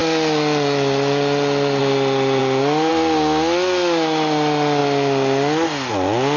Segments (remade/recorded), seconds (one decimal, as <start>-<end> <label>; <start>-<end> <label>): 0.0-6.4 recorded